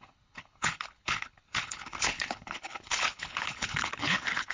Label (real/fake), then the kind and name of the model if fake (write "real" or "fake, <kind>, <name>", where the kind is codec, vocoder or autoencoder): fake, codec, HILCodec